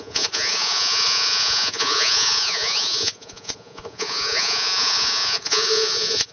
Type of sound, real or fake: fake